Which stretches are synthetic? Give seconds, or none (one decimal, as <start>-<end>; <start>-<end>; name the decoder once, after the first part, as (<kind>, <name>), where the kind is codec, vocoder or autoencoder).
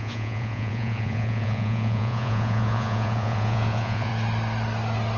0.0-4.1 (vocoder, Vocos)